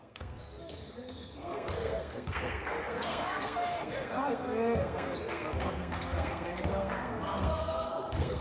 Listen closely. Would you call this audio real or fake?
fake